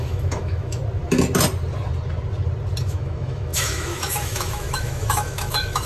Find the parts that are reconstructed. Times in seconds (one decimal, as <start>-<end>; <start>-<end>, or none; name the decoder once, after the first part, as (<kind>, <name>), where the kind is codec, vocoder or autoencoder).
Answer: 0.0-0.8 (autoencoder, DAC-VAE); 2.8-5.9